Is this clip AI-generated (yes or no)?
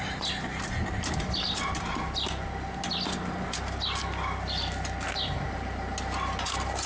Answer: no